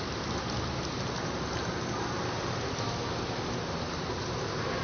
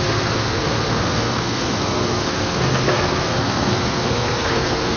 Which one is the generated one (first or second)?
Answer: second